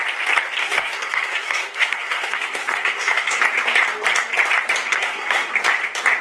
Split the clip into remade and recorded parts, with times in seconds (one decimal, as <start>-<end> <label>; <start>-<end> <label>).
0.0-0.6 recorded; 0.6-3.4 remade; 3.4-4.9 recorded; 4.9-5.5 remade; 5.5-6.2 recorded